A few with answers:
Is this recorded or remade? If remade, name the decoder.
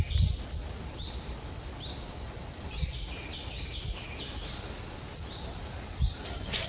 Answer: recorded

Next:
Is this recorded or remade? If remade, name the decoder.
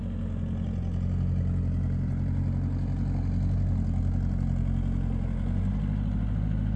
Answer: recorded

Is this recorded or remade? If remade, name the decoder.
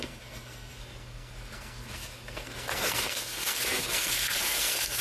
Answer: remade, codec, SNAC